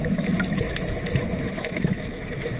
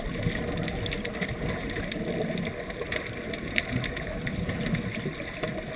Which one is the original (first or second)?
second